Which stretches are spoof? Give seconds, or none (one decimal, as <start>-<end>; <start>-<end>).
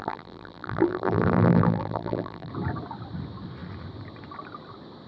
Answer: 0.0-2.5